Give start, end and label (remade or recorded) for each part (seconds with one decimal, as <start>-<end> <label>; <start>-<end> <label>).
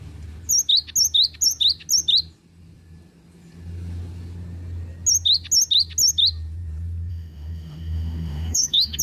0.0-7.1 recorded; 7.1-9.0 remade